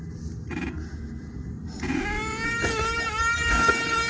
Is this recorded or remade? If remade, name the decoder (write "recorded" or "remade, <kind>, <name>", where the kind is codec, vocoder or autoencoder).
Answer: recorded